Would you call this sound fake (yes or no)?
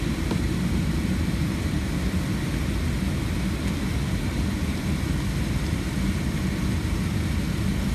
no